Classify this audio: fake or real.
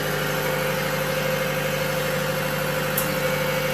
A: real